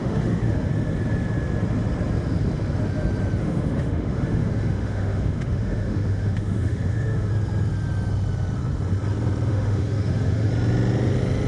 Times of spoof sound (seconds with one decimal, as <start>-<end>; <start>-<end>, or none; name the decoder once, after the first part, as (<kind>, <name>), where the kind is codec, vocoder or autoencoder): 0.0-0.7 (autoencoder, DAC-VAE); 3.4-7.3; 9.5-10.5